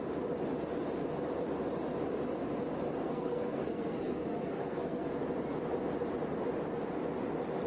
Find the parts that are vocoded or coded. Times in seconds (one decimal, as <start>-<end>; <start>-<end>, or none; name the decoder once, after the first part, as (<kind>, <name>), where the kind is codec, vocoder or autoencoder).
3.0-5.1 (codec, SNAC)